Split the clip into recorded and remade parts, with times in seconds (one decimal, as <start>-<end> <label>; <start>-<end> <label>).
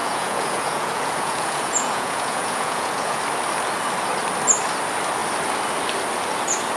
0.0-3.2 remade; 3.2-6.8 recorded